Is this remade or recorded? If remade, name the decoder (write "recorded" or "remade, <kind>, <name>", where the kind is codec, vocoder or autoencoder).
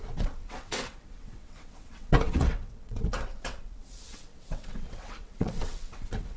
remade, vocoder, WaveNeXt